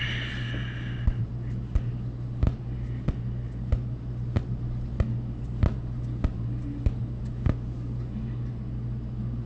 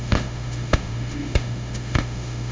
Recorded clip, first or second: first